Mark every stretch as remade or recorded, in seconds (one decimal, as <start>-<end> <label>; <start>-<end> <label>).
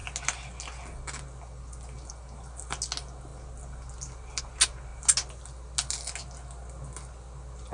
0.0-7.7 recorded